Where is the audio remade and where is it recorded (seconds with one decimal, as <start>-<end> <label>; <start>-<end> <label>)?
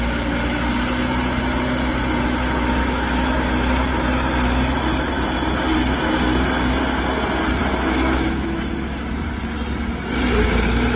0.0-2.8 recorded; 2.8-3.4 remade; 3.4-7.6 recorded; 7.6-9.1 remade; 9.1-11.0 recorded